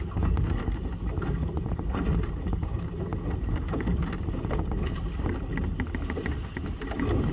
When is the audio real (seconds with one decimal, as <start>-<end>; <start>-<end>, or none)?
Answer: 0.0-7.3